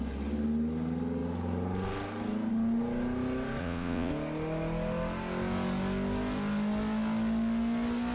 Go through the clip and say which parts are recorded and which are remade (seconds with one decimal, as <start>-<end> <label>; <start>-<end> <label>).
0.0-3.6 recorded; 3.6-4.1 remade; 4.1-8.1 recorded